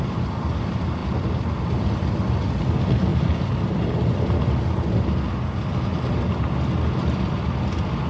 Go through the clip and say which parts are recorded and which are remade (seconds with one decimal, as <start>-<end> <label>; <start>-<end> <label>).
0.0-8.1 recorded